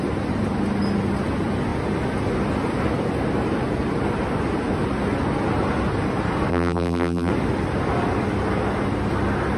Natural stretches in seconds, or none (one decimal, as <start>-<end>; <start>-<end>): 0.0-6.5; 7.3-9.6

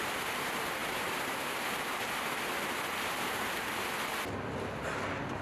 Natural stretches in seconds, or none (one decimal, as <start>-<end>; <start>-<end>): 0.0-0.8; 2.1-5.4

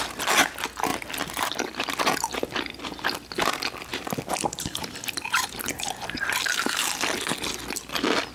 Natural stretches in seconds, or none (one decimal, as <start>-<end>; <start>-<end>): 0.0-0.9; 1.9-3.9; 6.6-8.3

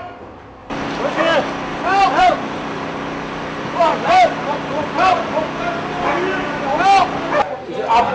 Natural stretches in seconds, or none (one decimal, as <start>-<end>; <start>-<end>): 0.0-0.6; 1.2-1.7; 5.6-8.1

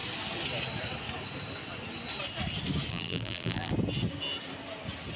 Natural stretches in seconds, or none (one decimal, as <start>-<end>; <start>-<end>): 0.0-2.9; 3.7-5.2